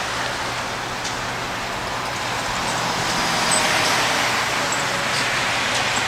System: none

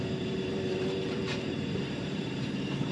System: vocoder, BigVGAN v2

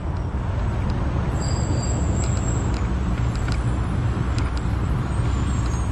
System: none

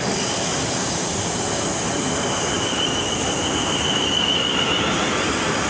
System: vocoder, BigVGAN v2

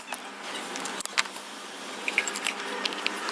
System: vocoder, BigVGAN v2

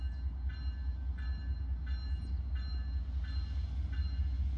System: none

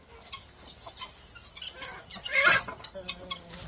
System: none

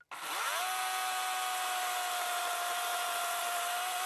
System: none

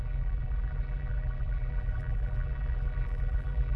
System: vocoder, BigVGAN v2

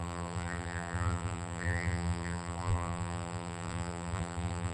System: vocoder, BigVGAN v2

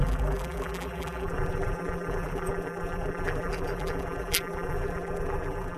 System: vocoder, BigVGAN v2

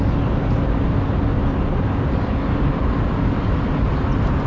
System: none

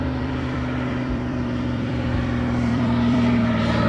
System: vocoder, BigVGAN v2